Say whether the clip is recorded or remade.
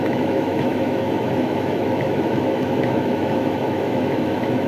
remade